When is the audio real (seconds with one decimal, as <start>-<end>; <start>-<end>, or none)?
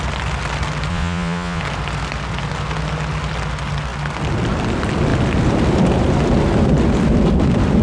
0.0-0.9; 1.6-7.8